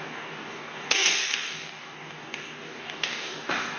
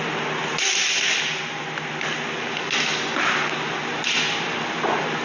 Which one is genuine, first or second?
second